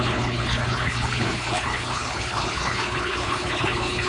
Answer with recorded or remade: remade